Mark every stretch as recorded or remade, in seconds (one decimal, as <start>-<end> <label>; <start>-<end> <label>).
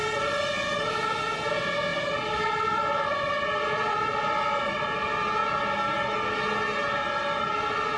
0.0-0.9 remade; 0.9-1.9 recorded; 1.9-4.9 remade; 4.9-8.0 recorded